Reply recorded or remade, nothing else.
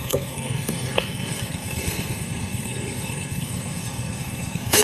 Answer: remade